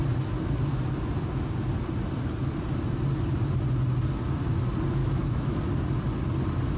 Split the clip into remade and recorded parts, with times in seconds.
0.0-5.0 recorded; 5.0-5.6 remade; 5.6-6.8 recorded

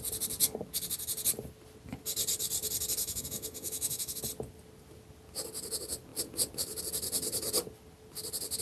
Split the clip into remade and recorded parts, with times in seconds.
0.0-3.0 recorded; 3.0-4.2 remade; 4.2-8.6 recorded

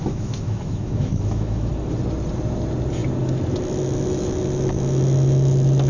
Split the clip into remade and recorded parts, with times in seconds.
0.0-1.7 remade; 1.7-5.9 recorded

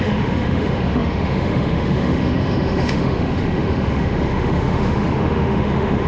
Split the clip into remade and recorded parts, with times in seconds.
0.0-6.1 remade

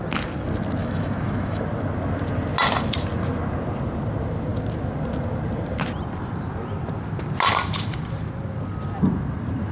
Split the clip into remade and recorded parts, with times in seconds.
0.0-0.8 recorded; 0.8-1.6 remade; 1.6-9.7 recorded

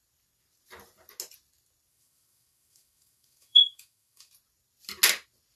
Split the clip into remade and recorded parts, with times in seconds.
0.0-1.9 recorded; 1.9-4.3 remade; 4.3-5.6 recorded

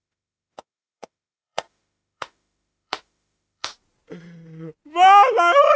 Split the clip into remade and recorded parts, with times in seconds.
0.0-3.7 remade; 3.7-5.8 recorded

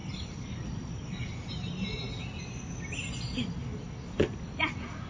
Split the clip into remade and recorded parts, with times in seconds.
0.0-5.1 recorded